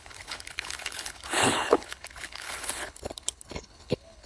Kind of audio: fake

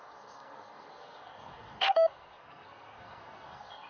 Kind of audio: fake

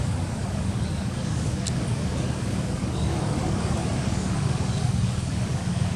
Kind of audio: fake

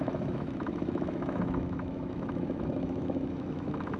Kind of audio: fake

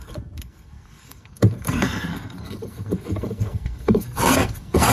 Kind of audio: fake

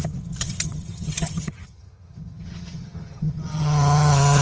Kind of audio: fake